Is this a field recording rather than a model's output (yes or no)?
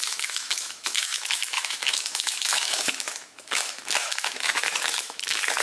no